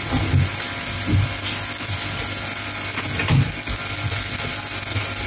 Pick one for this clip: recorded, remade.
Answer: recorded